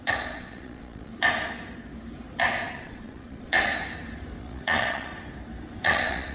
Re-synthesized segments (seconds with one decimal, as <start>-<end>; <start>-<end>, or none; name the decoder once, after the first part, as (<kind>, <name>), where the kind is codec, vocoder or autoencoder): 0.0-1.1 (vocoder, Vocos); 2.7-3.8; 4.4-5.1; 5.8-6.3